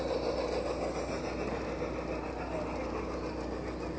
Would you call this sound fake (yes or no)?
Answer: no